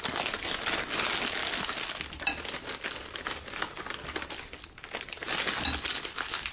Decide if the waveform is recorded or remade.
recorded